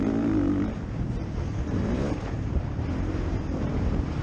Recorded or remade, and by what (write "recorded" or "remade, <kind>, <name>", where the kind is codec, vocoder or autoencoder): remade, vocoder, BigVGAN v2